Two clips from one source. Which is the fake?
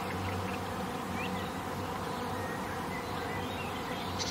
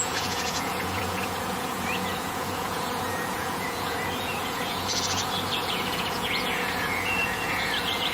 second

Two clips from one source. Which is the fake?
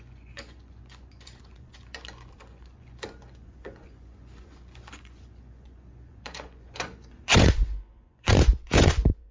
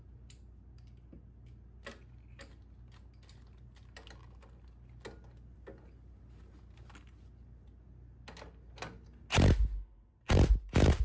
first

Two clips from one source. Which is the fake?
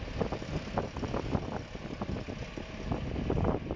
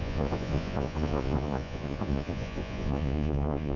second